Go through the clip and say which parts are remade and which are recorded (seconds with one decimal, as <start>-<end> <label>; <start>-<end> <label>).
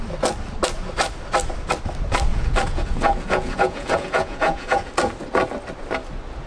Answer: 0.0-2.3 recorded; 2.3-4.9 remade; 4.9-6.5 recorded